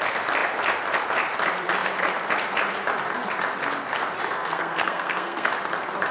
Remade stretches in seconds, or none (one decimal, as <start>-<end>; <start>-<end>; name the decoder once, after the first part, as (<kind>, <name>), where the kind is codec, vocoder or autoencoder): 4.3-5.5 (codec, SNAC)